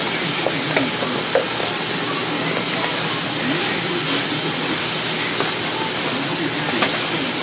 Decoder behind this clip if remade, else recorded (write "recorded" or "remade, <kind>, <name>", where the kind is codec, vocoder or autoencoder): recorded